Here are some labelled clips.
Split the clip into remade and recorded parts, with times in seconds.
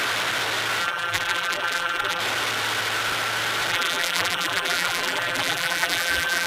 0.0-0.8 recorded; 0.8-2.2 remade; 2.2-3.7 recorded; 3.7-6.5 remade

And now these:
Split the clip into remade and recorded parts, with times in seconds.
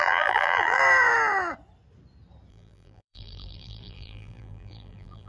0.0-0.8 remade; 0.8-2.5 recorded; 2.5-5.3 remade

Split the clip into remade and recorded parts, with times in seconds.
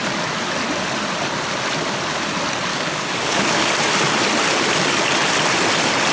0.0-2.7 recorded; 2.7-3.7 remade; 3.7-6.1 recorded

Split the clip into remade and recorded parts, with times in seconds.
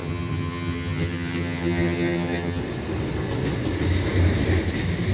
0.0-2.6 remade; 2.6-5.1 recorded